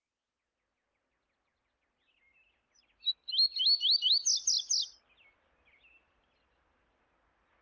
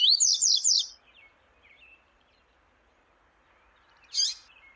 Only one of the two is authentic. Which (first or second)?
first